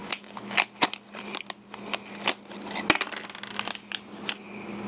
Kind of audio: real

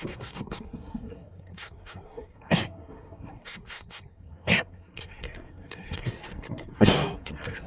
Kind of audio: fake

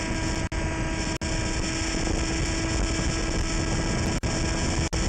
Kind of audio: real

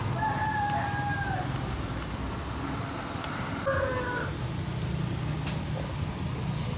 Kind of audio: real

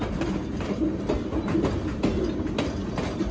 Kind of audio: real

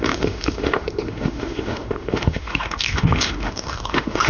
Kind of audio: fake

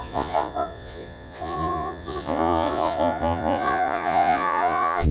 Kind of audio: fake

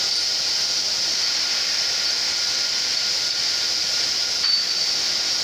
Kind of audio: real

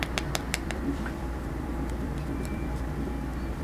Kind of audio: fake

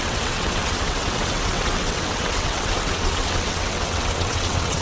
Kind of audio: fake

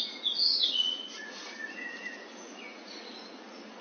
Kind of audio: fake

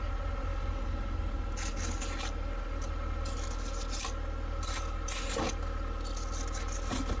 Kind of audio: real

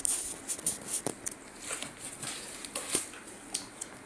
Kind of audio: real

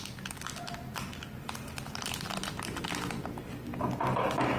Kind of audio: real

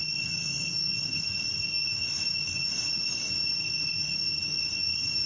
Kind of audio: fake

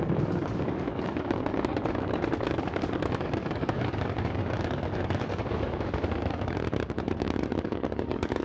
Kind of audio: fake